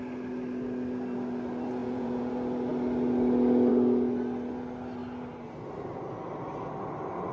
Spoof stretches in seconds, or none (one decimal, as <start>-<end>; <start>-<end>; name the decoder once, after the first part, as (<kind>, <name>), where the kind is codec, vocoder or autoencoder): 1.8-2.3 (vocoder, Vocos)